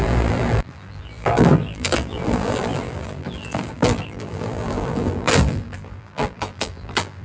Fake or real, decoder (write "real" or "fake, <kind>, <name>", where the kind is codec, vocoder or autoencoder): fake, vocoder, BigVGAN v2